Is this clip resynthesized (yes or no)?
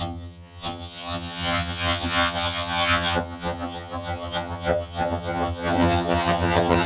yes